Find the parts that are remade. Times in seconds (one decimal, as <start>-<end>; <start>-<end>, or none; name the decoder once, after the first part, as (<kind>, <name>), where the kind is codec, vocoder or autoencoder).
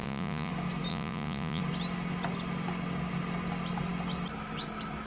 0.0-0.5 (vocoder, Vocos); 0.9-1.6